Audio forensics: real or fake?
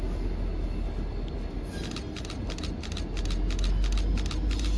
real